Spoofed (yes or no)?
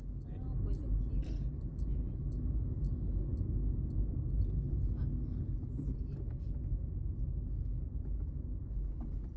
no